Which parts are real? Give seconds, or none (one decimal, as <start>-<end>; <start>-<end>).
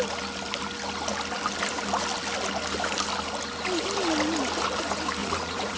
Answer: 0.0-5.2